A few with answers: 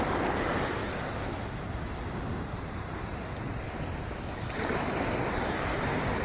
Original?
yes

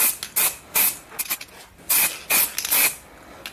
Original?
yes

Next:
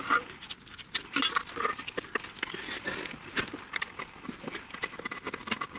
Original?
yes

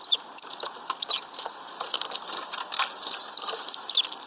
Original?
yes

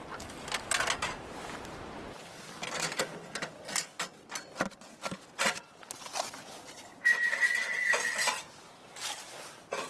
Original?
yes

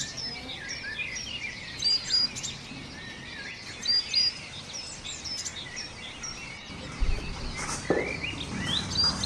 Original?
yes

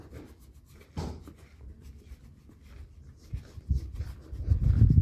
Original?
yes